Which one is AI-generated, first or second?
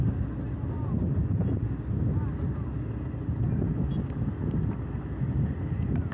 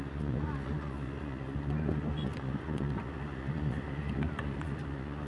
second